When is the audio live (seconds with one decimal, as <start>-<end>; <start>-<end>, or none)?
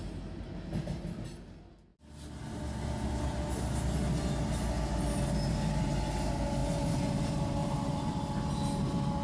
0.0-7.6; 8.1-9.2